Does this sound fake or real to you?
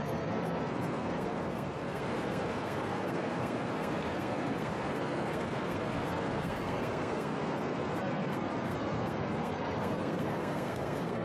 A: fake